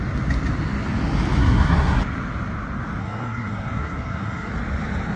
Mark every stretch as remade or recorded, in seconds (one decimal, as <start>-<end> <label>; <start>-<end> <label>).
0.0-1.4 recorded; 1.4-2.0 remade; 2.0-3.0 recorded; 3.0-4.5 remade; 4.5-5.2 recorded